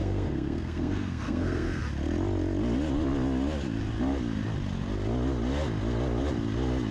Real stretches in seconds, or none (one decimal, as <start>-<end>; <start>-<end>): 1.8-6.9